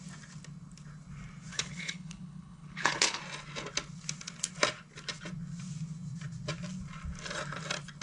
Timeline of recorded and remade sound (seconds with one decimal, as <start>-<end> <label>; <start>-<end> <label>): 0.0-1.5 recorded; 1.5-3.2 remade; 3.2-8.0 recorded